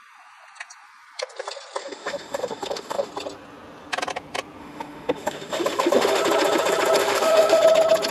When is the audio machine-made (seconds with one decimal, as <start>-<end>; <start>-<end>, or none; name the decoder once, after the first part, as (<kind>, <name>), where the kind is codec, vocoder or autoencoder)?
1.8-3.1 (autoencoder, DAC-VAE); 4.6-6.2; 7.0-7.6